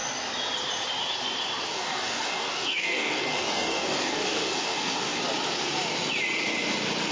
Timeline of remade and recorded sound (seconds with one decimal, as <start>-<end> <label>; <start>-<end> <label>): 0.0-1.7 recorded; 1.7-5.2 remade; 5.2-7.1 recorded